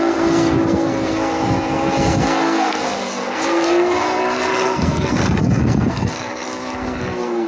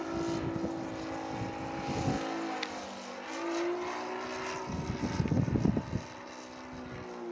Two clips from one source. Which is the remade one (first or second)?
first